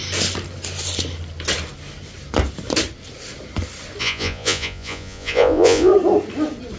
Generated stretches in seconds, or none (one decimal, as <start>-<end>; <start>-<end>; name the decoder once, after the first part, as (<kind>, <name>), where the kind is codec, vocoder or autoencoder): 4.0-5.9 (vocoder, Vocos)